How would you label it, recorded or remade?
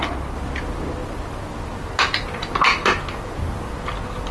recorded